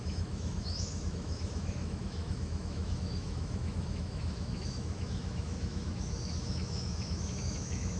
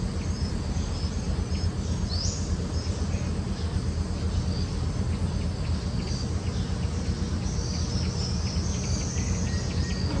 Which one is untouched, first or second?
second